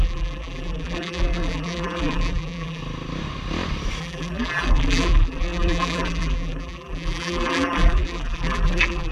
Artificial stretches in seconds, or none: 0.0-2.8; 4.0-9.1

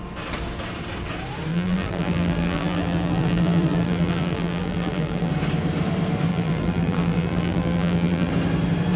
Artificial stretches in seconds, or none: 1.5-5.3; 6.3-8.3

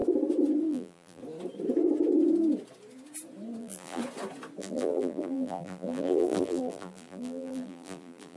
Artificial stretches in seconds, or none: 0.7-1.2; 3.6-4.0; 4.6-8.4

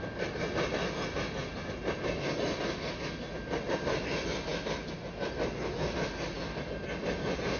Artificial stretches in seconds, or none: none